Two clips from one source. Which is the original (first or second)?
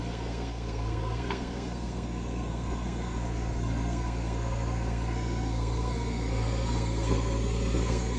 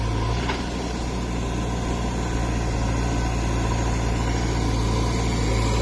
second